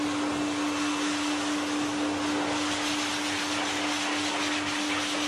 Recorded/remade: recorded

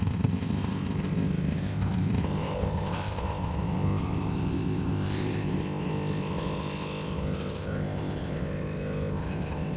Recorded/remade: remade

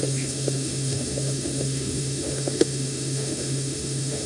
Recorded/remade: remade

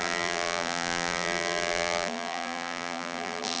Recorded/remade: remade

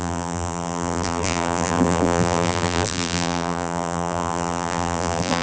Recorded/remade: remade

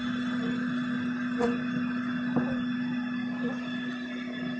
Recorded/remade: recorded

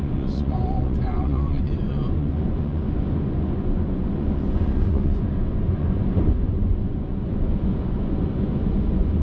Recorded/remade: remade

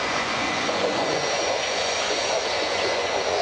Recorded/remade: remade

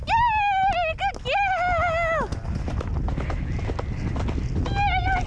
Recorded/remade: recorded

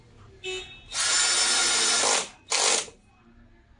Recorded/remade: recorded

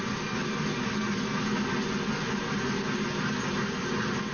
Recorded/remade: recorded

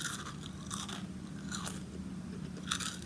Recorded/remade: recorded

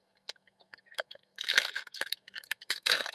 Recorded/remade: remade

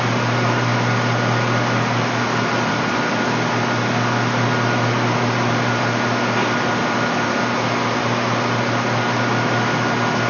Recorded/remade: recorded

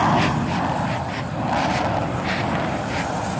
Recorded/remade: recorded